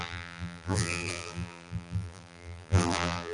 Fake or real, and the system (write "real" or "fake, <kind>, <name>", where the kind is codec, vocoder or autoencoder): fake, vocoder, BigVGAN v2